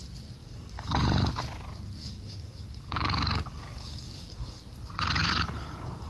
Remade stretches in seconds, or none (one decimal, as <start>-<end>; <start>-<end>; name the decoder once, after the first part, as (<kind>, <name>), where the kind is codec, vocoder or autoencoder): 0.4-1.3 (codec, DAC); 2.0-4.6; 5.2-6.1